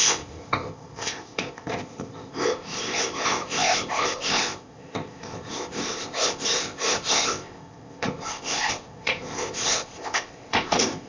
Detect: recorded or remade remade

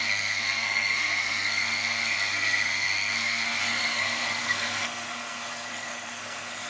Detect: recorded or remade remade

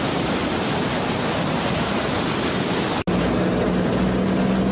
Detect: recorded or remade recorded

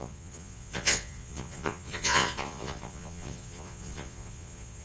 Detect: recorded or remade remade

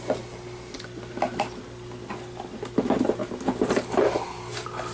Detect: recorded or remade recorded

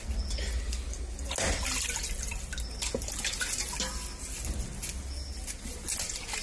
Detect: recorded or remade recorded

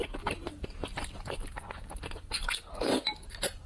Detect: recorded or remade recorded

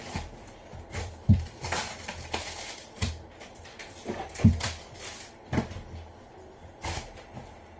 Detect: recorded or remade remade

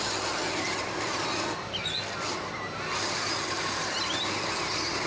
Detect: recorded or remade recorded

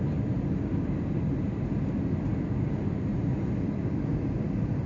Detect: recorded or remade recorded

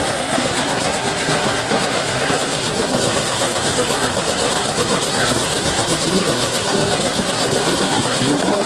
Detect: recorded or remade remade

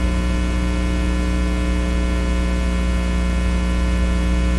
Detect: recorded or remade recorded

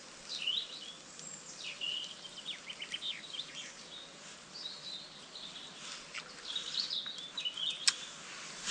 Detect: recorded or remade recorded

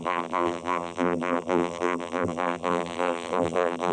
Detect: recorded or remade remade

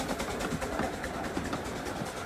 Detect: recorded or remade recorded